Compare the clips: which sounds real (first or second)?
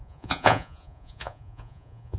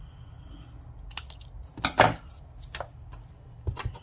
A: second